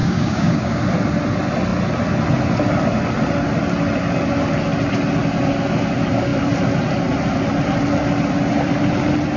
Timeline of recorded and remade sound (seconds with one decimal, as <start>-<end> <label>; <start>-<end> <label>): 0.0-0.8 remade; 0.8-9.4 recorded